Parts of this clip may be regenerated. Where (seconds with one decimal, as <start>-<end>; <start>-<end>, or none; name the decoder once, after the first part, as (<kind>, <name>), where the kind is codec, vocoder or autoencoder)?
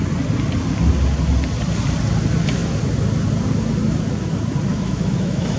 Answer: 4.7-5.6 (autoencoder, DAC-VAE)